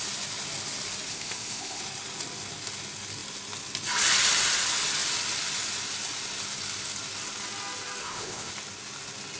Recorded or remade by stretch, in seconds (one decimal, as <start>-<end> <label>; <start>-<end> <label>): 0.0-1.1 recorded; 1.1-1.8 remade; 1.8-8.0 recorded; 8.0-8.5 remade; 8.5-9.4 recorded